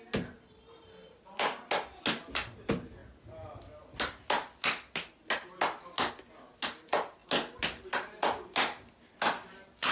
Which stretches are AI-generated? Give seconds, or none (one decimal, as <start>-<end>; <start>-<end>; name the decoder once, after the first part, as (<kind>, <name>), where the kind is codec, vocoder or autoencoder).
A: none